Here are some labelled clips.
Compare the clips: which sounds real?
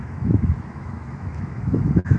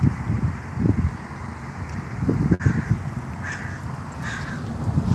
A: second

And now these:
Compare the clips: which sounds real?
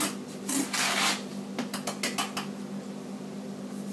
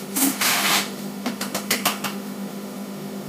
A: first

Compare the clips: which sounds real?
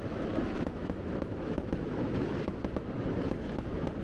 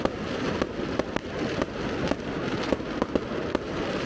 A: second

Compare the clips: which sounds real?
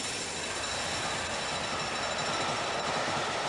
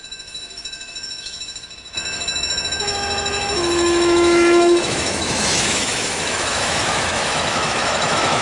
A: first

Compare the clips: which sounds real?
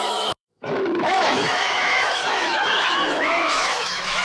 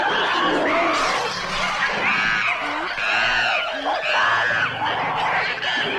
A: second